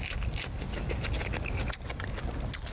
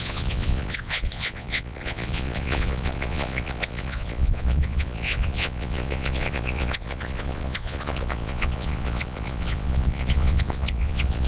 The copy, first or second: second